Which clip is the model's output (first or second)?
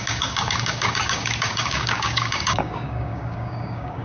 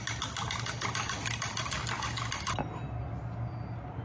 first